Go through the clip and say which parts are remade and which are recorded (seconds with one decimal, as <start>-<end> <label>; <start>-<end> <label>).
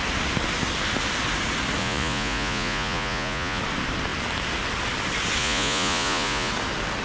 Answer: 0.0-1.8 recorded; 1.8-3.6 remade; 3.6-5.4 recorded; 5.4-6.5 remade; 6.5-7.0 recorded